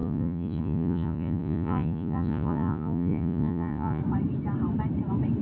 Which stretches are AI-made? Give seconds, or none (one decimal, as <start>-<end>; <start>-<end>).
0.0-4.0